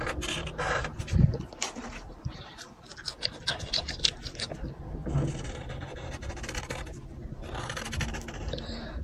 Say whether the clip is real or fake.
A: real